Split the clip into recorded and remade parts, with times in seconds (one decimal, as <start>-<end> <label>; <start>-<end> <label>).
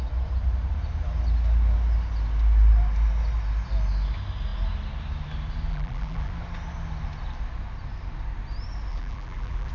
0.0-5.7 recorded; 5.7-6.3 remade; 6.3-8.9 recorded; 8.9-9.7 remade